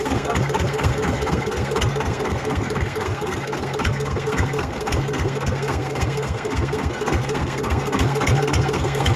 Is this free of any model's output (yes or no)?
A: no